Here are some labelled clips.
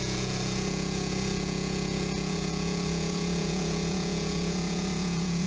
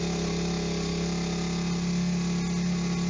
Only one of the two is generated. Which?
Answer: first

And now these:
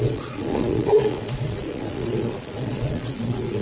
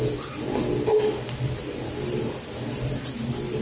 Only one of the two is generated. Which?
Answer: first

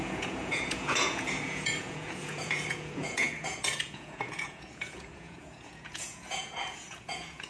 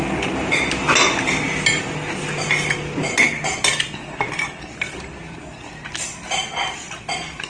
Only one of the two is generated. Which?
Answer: first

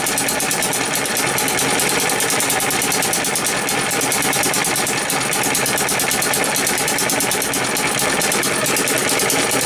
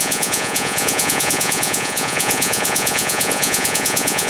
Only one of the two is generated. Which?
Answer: second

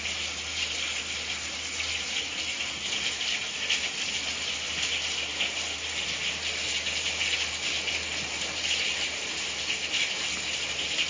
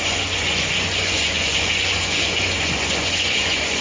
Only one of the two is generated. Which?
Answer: second